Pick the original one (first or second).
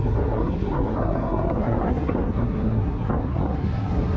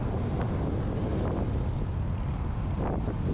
second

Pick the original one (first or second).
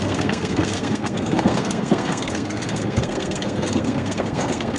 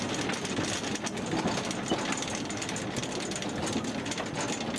second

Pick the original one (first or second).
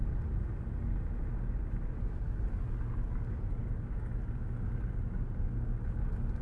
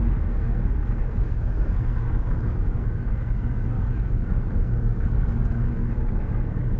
first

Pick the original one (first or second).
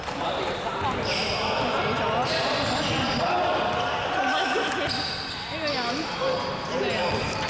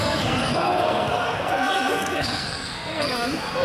first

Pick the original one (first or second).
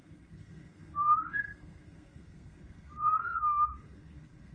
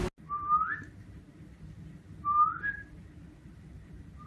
second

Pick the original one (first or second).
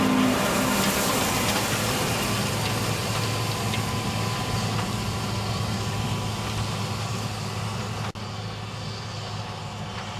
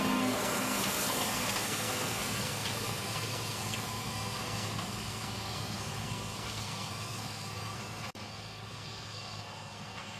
first